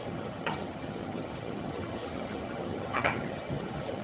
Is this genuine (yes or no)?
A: no